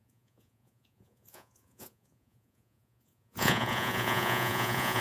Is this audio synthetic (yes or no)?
yes